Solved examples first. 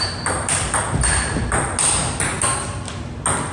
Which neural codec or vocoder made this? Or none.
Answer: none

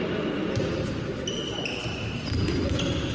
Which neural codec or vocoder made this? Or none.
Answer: none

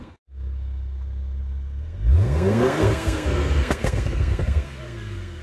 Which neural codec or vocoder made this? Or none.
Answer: codec, SNAC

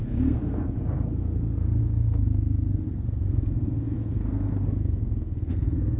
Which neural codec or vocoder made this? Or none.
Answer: codec, SNAC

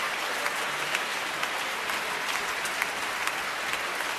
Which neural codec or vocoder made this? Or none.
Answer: none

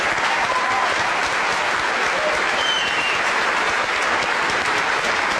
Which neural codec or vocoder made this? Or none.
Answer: none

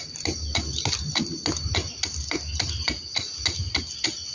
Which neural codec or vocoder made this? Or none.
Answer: none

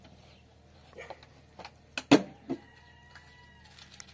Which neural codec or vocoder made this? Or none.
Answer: none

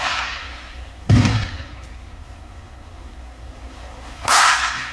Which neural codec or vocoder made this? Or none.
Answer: codec, SNAC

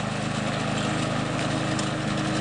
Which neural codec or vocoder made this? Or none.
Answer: none